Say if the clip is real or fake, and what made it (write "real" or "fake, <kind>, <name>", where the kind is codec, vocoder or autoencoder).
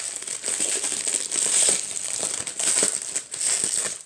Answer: real